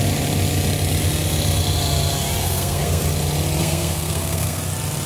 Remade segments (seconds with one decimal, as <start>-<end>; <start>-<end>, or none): 2.4-3.0; 3.6-4.6